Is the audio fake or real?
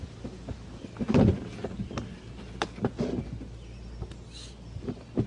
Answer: real